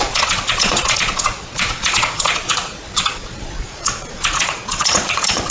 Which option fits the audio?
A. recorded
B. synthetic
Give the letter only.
B